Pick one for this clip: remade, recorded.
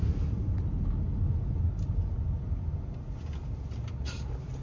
recorded